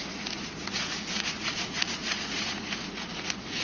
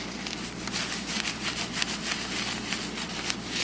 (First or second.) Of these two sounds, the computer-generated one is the first